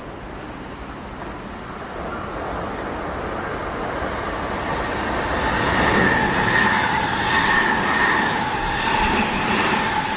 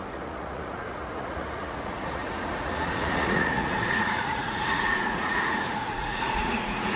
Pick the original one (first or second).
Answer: first